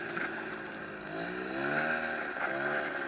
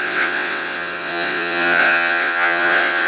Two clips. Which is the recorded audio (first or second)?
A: first